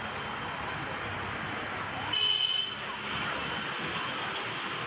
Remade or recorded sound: recorded